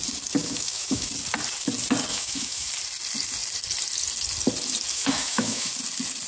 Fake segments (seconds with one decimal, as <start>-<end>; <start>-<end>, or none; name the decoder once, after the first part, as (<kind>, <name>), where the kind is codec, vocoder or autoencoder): 0.4-1.1 (autoencoder, DAC-VAE); 2.1-2.7; 4.9-5.7